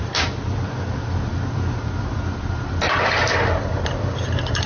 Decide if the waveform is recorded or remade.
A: remade